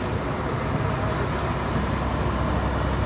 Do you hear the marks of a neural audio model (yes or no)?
no